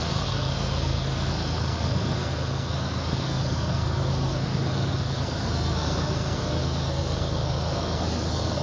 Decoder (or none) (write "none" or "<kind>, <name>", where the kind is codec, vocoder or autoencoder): codec, SNAC